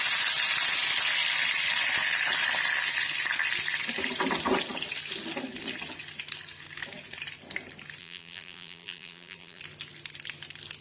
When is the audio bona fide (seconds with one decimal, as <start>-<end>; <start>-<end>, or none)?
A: 0.0-8.0; 9.6-10.8